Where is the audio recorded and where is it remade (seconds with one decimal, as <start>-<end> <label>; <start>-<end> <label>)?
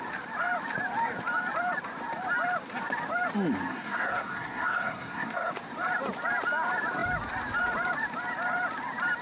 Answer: 0.0-3.7 recorded; 3.7-5.5 remade; 5.5-9.2 recorded